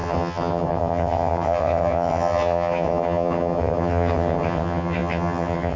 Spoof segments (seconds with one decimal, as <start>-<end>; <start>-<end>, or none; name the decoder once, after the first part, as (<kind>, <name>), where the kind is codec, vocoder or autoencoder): 0.0-5.8 (vocoder, HiFi-GAN)